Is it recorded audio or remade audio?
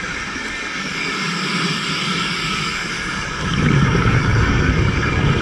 remade